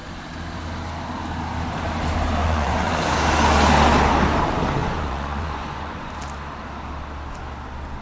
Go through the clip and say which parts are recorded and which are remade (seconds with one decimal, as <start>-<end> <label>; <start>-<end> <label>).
0.0-2.4 recorded; 2.4-3.0 remade; 3.0-4.8 recorded; 4.8-6.1 remade; 6.1-8.0 recorded